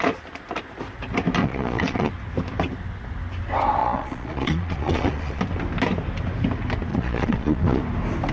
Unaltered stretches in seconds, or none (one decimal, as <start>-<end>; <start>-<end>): 0.0-1.4; 2.1-3.8; 5.4-6.9; 7.8-8.3